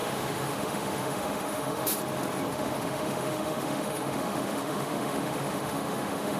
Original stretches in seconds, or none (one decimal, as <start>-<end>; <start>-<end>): 2.0-2.5

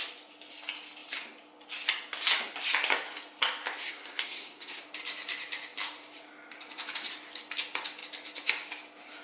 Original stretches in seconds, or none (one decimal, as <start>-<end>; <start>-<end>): 0.0-3.8; 4.8-9.2